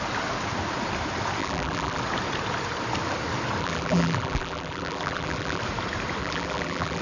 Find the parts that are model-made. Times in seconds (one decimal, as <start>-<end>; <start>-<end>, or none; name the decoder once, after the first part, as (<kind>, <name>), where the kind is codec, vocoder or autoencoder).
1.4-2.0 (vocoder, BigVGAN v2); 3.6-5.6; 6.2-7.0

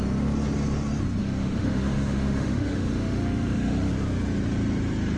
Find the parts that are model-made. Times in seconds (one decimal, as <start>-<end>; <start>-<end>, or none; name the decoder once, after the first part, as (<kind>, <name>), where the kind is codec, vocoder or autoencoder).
1.2-3.9 (autoencoder, DAC-VAE)

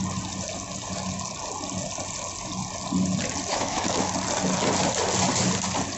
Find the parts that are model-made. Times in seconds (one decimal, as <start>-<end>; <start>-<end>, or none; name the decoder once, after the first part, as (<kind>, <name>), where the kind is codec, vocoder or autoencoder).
3.5-4.1 (autoencoder, DAC-VAE)

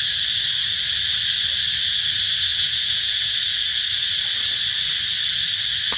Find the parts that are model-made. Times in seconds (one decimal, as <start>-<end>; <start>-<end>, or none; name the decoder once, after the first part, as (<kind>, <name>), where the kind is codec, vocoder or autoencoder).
2.5-3.3 (vocoder, Vocos)